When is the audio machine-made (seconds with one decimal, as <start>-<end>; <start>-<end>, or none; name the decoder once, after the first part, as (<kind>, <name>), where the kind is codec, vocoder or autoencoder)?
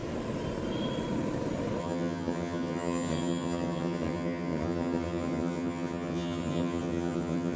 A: 1.8-7.6 (vocoder, HiFi-GAN)